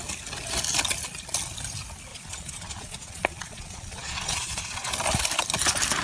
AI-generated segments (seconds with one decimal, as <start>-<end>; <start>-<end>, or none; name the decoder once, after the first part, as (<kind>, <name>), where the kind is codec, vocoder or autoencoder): 2.1-4.9 (vocoder, Vocos)